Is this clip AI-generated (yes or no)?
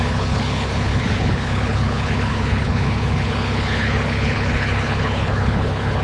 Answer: yes